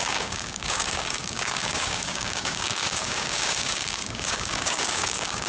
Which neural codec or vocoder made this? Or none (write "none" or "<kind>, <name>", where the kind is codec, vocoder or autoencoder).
codec, DAC